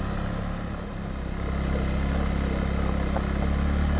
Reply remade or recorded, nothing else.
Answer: recorded